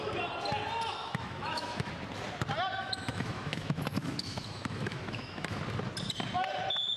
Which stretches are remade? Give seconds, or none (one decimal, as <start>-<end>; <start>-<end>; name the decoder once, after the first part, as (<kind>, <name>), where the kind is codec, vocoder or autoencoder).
1.0-1.9 (autoencoder, DAC-VAE); 2.8-5.6